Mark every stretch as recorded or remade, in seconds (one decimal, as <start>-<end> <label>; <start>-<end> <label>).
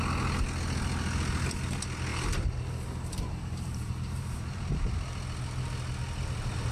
0.0-2.1 recorded; 2.1-4.8 remade; 4.8-6.7 recorded